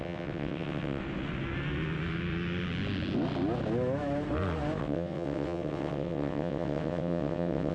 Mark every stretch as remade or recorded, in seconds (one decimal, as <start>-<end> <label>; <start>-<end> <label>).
0.0-1.0 remade; 1.0-4.8 recorded; 4.8-7.7 remade